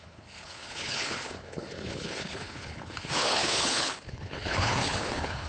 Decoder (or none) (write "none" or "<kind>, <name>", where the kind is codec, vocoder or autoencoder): codec, HILCodec